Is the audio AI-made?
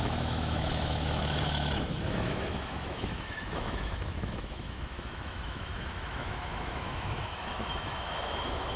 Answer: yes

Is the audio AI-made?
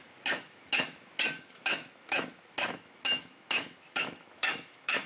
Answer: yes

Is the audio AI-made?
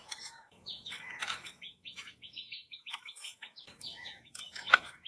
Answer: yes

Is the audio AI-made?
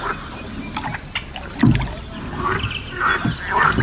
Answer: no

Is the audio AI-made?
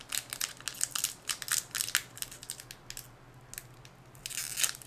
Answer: no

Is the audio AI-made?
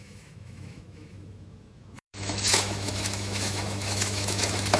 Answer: yes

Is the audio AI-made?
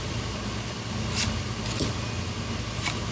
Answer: no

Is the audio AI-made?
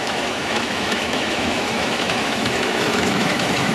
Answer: yes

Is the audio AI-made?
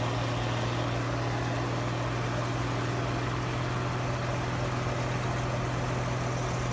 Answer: no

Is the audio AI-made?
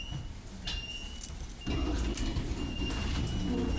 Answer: no